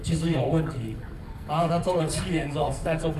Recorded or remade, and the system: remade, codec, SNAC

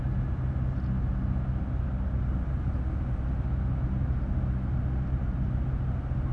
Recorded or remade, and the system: recorded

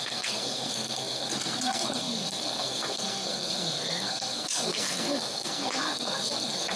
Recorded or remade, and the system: remade, codec, SNAC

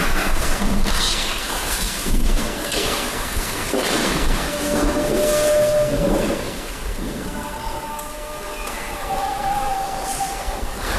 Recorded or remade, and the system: remade, codec, SNAC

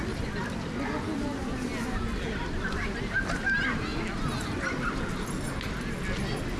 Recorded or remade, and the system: recorded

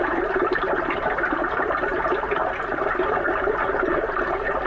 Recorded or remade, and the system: recorded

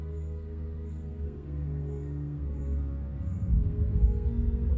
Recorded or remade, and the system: remade, codec, SNAC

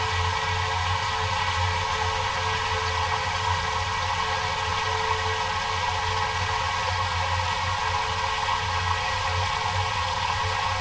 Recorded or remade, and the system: recorded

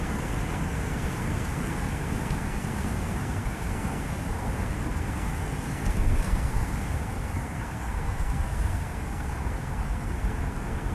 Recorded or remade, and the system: remade, codec, SNAC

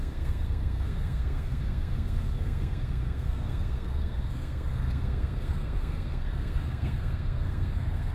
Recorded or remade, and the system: remade, codec, SNAC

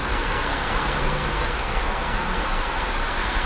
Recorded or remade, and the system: remade, codec, SNAC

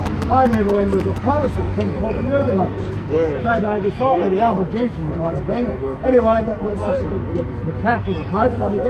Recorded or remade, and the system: remade, codec, SNAC